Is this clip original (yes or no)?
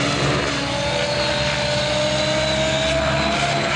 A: yes